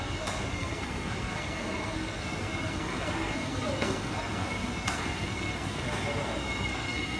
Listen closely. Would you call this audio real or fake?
fake